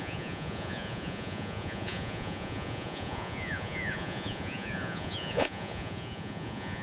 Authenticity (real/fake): fake